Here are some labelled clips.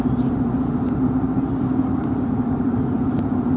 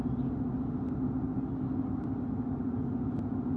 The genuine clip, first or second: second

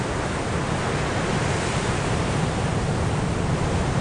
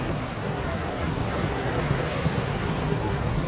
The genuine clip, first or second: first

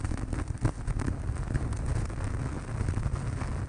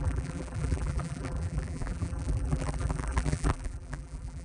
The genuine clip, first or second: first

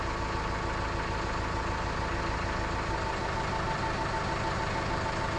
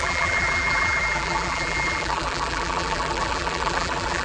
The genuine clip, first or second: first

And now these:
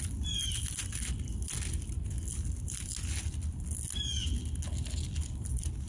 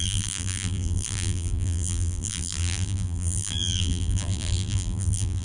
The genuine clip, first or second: first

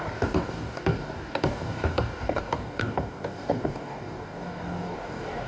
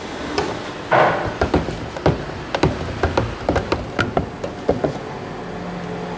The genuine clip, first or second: second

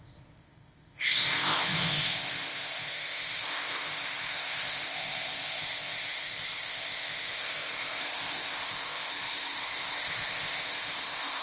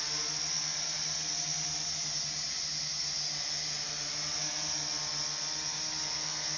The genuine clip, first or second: second